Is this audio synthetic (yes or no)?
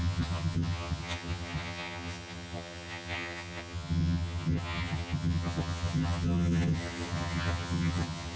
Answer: yes